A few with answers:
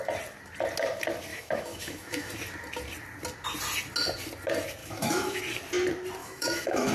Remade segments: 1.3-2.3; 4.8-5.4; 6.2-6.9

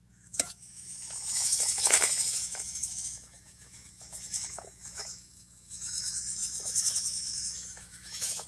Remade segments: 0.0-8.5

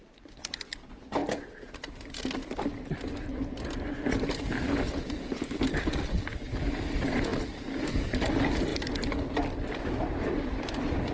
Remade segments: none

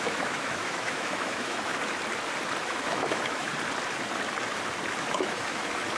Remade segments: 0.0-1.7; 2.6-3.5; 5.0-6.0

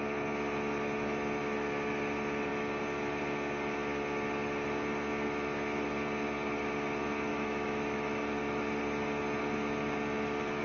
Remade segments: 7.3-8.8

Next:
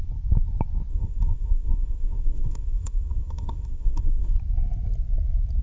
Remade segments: 0.9-4.3

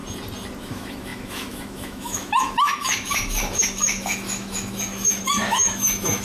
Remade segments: 0.6-6.2